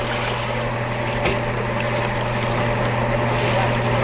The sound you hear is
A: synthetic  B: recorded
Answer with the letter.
B